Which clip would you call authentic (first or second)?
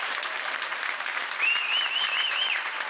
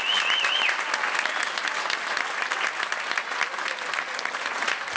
second